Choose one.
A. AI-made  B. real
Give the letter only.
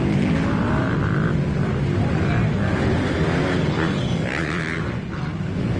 B